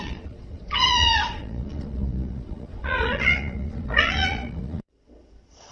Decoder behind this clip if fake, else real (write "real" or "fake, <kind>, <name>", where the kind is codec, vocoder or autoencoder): fake, vocoder, Vocos